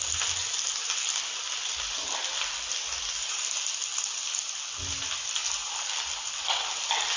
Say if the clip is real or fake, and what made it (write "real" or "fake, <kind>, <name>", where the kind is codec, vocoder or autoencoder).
real